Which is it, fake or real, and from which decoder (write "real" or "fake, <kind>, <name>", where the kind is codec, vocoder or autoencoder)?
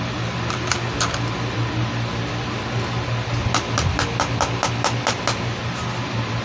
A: real